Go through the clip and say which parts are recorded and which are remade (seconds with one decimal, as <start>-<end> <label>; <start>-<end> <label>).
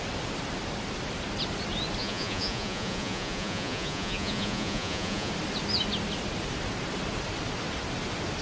0.0-2.0 recorded; 2.0-5.3 remade; 5.3-8.4 recorded